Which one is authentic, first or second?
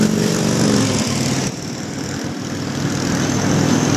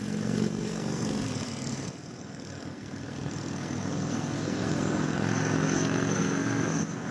first